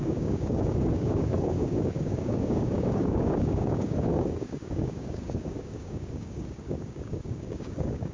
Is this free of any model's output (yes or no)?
no